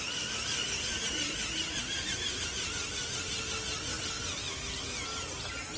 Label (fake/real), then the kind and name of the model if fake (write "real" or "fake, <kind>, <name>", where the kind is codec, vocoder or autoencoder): real